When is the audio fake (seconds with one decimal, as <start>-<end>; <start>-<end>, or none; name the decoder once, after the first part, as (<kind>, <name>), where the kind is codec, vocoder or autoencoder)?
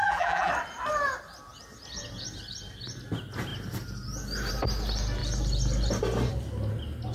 0.0-0.5 (vocoder, BigVGAN v2)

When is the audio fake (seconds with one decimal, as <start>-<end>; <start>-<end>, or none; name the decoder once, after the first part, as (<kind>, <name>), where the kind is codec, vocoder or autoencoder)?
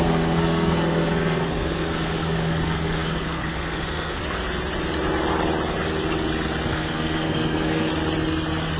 0.0-4.2 (codec, SNAC); 6.7-7.9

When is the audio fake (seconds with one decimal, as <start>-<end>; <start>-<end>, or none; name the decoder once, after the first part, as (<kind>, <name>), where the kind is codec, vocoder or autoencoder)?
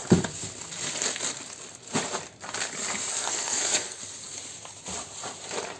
3.1-4.0 (codec, SNAC)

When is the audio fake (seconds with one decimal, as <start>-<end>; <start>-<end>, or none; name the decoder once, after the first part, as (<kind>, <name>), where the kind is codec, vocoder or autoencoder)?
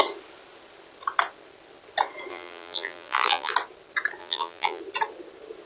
2.3-3.5 (vocoder, BigVGAN v2); 4.2-4.8